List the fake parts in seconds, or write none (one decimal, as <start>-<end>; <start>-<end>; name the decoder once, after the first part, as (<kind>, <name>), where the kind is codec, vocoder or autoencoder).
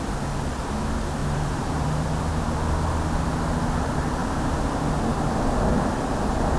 1.2-2.2 (vocoder, BigVGAN v2)